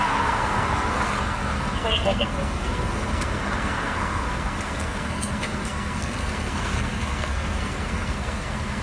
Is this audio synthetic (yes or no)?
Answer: yes